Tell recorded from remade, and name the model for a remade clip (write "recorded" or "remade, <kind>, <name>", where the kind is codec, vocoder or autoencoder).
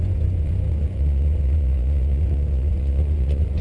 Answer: remade, vocoder, Vocos